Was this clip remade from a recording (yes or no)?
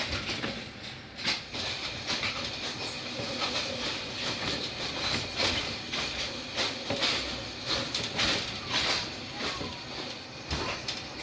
no